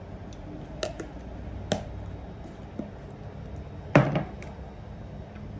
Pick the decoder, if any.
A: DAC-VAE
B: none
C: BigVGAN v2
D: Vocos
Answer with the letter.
B